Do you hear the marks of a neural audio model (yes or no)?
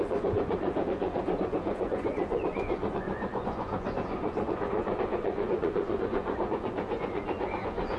yes